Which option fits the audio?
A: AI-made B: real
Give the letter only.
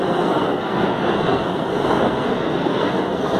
A